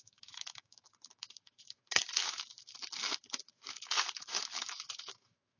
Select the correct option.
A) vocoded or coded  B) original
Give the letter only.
A